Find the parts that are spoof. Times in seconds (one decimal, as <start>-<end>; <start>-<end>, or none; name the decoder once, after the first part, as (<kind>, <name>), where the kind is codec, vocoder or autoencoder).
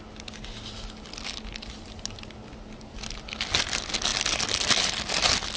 none